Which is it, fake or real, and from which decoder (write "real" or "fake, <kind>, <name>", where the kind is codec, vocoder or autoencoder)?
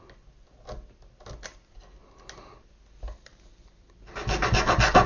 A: real